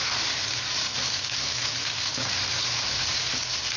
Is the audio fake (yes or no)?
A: no